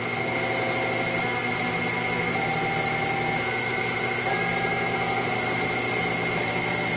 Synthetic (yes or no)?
no